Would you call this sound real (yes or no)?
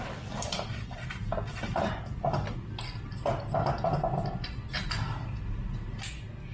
yes